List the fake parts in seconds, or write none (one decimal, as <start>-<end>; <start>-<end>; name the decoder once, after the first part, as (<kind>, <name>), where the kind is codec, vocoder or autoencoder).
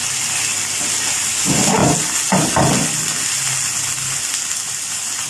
none